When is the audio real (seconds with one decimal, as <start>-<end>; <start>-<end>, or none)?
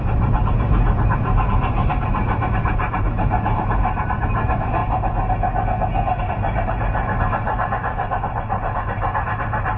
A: 4.8-6.2